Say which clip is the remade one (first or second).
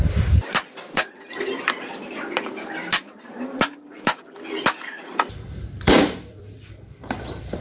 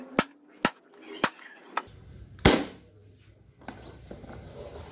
first